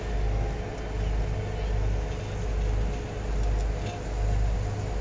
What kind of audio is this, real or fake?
real